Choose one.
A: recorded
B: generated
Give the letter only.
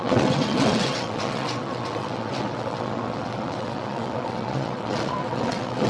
B